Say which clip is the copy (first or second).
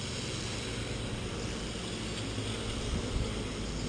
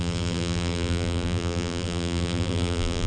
second